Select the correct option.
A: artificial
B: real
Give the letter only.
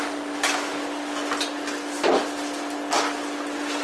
B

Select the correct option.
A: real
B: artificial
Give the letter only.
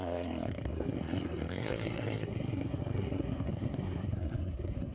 B